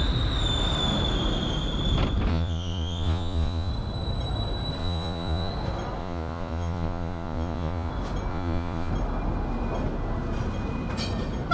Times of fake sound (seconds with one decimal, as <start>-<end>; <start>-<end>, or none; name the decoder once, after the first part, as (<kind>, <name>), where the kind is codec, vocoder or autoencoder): 2.3-3.7 (vocoder, Vocos); 4.8-5.5; 6.0-7.9; 8.3-8.9